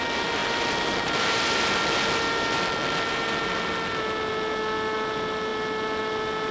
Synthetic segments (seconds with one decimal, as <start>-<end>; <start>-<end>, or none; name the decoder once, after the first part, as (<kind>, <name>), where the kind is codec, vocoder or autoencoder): none